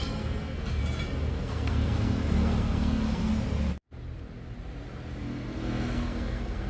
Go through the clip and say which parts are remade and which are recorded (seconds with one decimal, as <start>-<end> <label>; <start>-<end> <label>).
0.0-0.8 remade; 0.8-1.3 recorded; 1.3-3.3 remade; 3.3-5.2 recorded; 5.2-6.7 remade